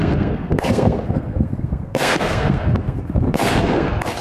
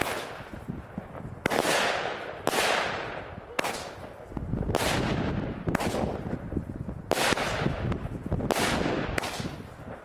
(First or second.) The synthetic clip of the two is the first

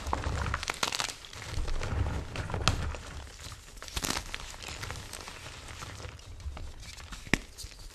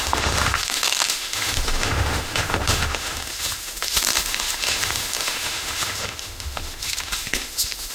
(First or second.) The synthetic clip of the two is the second